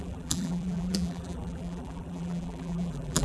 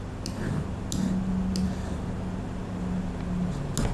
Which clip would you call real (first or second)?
second